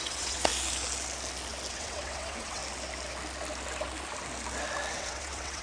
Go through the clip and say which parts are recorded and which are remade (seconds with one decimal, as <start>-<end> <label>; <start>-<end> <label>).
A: 0.0-0.5 remade; 0.5-1.7 recorded; 1.7-2.6 remade; 2.6-4.9 recorded; 4.9-5.6 remade